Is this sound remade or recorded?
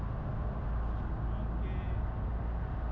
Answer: recorded